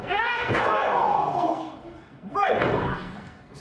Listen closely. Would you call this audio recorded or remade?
remade